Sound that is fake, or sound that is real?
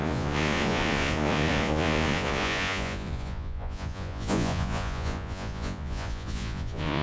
fake